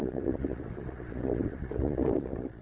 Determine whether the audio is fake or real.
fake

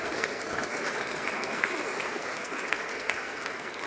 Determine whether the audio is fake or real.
fake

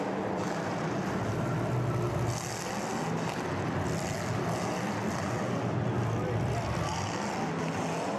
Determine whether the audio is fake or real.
real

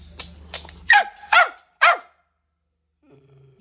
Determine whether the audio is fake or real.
real